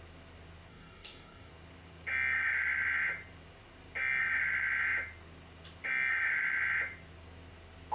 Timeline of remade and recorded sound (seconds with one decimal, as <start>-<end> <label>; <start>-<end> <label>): 0.0-0.7 recorded; 0.7-1.5 remade; 1.5-7.9 recorded